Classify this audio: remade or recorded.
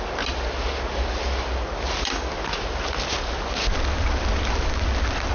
recorded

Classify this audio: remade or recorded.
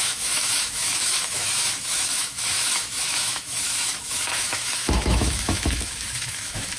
remade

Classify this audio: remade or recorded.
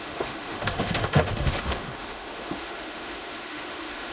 remade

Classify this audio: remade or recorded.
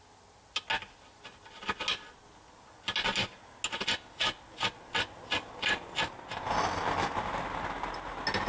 recorded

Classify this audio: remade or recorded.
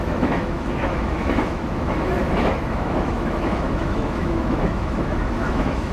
remade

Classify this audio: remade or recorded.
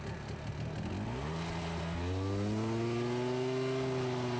recorded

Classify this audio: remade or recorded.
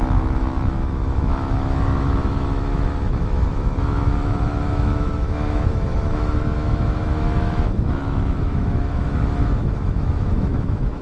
remade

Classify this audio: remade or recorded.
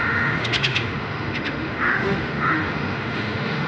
remade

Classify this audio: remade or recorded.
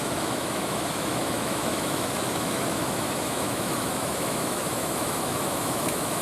remade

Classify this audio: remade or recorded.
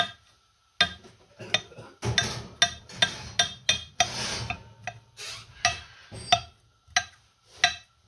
recorded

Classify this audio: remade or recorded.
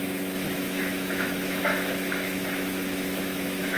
remade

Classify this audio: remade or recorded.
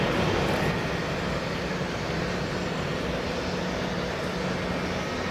recorded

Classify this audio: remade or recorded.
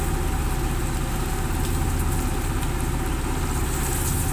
recorded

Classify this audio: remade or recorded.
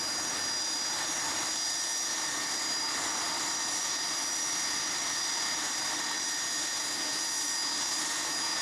recorded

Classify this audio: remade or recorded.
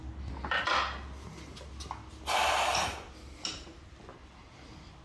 recorded